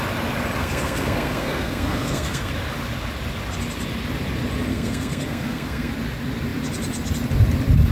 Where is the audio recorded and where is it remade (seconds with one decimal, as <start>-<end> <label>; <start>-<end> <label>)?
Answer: 0.0-0.6 recorded; 0.6-2.5 remade; 2.5-4.7 recorded; 4.7-5.9 remade; 5.9-7.9 recorded